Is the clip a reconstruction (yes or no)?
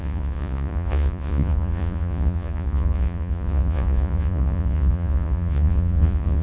yes